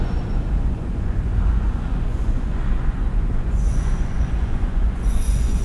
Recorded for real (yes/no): no